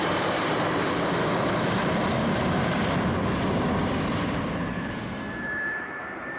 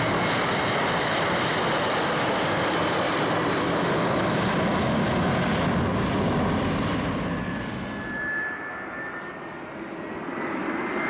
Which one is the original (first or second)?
second